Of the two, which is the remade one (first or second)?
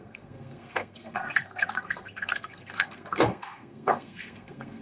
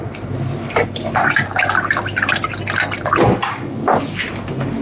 first